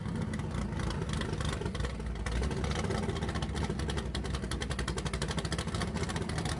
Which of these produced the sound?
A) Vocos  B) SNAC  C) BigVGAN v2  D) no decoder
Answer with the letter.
D